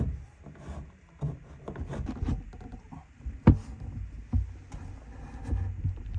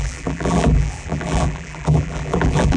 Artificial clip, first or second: second